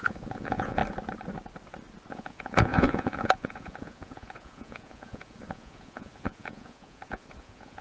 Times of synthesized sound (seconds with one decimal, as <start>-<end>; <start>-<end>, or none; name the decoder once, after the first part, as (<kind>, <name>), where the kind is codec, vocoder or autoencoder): 0.0-0.8 (vocoder, Vocos); 2.1-7.8